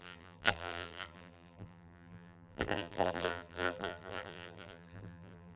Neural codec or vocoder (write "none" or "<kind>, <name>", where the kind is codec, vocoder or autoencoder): vocoder, BigVGAN v2